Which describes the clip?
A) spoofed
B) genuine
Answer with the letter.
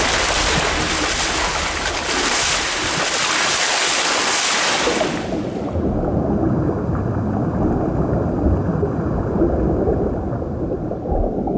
B